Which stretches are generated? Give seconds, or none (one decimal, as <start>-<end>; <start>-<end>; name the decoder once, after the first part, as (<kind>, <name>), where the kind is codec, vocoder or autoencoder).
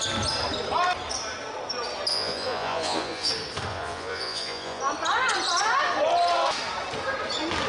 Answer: 2.1-3.3 (vocoder, Vocos); 3.7-4.8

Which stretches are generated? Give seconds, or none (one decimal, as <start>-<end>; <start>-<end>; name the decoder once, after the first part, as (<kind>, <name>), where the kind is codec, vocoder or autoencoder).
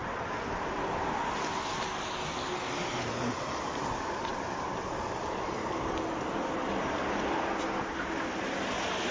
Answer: none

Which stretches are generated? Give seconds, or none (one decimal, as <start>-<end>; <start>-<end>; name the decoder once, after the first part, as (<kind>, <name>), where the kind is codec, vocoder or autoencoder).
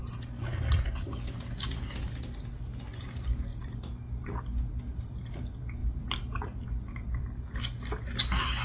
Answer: none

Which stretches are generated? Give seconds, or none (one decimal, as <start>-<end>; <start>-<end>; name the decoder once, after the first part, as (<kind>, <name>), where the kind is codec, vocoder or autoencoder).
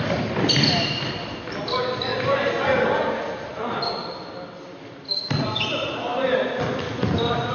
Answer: none